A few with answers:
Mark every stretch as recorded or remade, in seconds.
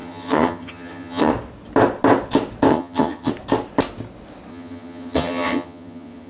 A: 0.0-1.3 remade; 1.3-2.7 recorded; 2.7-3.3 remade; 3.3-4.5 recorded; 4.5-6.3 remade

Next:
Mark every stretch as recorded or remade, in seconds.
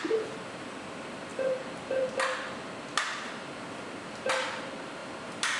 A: 0.0-5.6 recorded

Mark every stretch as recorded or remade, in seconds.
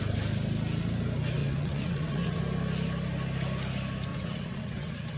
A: 0.0-1.4 recorded; 1.4-2.4 remade; 2.4-4.1 recorded; 4.1-5.2 remade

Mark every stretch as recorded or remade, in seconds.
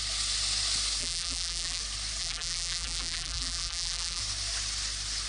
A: 0.0-1.0 recorded; 1.0-1.8 remade; 1.8-2.2 recorded; 2.2-4.2 remade; 4.2-5.3 recorded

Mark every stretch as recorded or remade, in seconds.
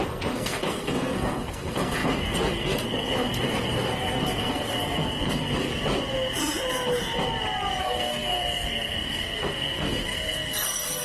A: 0.0-5.7 remade; 5.7-7.8 recorded; 7.8-11.0 remade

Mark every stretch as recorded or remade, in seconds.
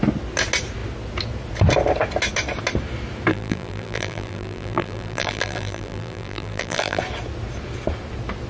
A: 0.0-3.3 recorded; 3.3-7.0 remade; 7.0-8.5 recorded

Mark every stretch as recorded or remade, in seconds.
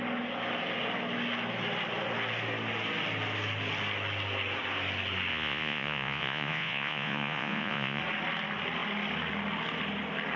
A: 0.0-5.3 recorded; 5.3-8.0 remade; 8.0-10.4 recorded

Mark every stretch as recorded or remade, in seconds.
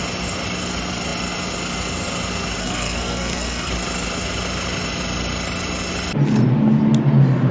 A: 0.0-2.6 recorded; 2.6-3.7 remade; 3.7-7.5 recorded